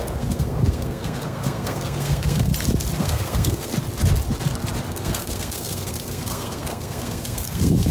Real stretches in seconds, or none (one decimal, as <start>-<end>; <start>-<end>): 2.5-3.0; 3.7-4.9